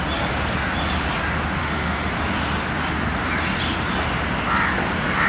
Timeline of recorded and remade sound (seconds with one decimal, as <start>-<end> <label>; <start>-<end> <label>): 0.0-1.6 recorded; 1.6-2.1 remade; 2.1-5.3 recorded